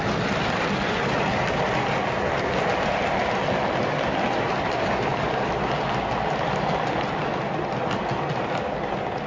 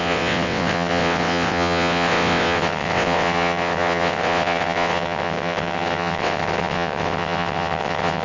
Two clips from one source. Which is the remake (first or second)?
second